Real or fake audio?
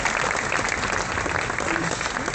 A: real